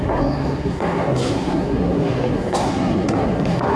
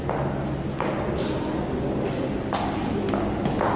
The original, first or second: second